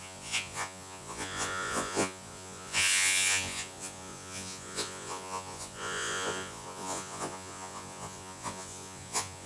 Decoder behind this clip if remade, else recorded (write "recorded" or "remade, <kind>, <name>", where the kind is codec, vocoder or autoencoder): remade, vocoder, Vocos